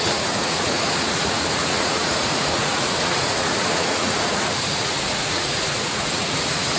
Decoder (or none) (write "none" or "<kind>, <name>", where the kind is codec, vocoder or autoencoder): vocoder, Vocos